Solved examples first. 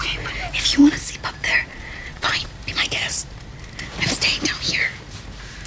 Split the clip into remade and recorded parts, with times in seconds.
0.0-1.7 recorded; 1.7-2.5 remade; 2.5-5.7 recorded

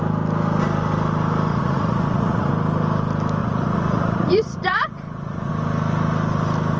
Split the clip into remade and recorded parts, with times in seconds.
0.0-1.5 recorded; 1.5-2.5 remade; 2.5-3.4 recorded; 3.4-5.5 remade; 5.5-6.8 recorded

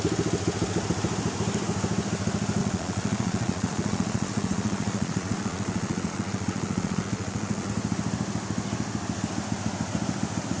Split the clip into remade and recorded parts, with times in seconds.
0.0-2.6 recorded; 2.6-7.7 remade; 7.7-10.6 recorded